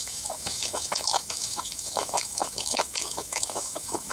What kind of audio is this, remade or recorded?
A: remade